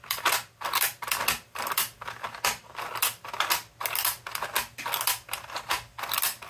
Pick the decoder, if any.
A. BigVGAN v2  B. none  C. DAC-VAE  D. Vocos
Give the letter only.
B